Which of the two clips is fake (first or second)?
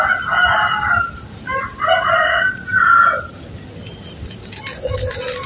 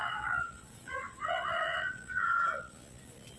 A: second